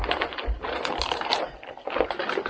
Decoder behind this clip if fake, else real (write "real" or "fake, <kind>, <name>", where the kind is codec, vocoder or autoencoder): fake, vocoder, BigVGAN v2